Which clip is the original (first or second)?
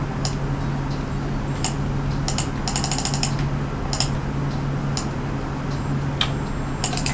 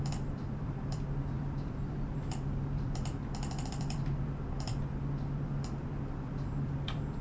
first